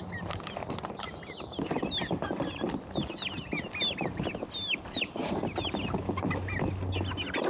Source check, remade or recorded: recorded